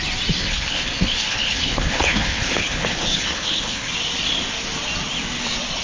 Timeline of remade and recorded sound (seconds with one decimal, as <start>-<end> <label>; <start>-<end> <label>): 0.0-0.4 recorded; 0.4-3.9 remade; 3.9-5.8 recorded